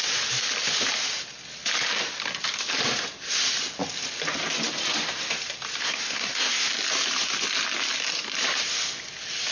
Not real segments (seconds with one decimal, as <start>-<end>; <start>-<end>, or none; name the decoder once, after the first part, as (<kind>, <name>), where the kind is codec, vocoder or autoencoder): 5.8-6.7 (codec, SNAC)